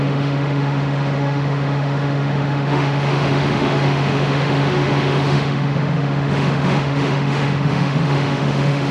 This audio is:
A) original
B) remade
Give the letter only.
B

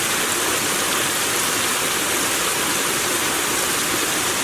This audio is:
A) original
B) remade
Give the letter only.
A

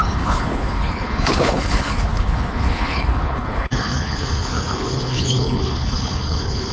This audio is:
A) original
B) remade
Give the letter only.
B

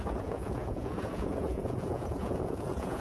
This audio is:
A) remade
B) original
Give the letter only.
A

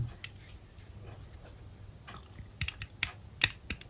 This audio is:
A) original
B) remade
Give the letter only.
A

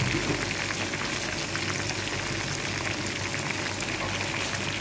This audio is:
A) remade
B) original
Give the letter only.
B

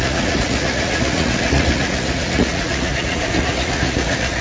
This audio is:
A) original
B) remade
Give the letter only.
B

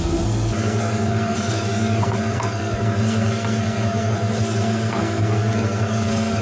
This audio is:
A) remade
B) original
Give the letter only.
A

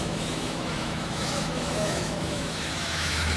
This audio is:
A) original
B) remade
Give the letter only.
B